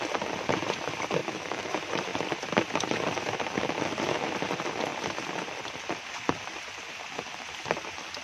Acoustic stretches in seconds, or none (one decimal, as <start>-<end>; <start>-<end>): 0.0-1.2; 1.7-8.2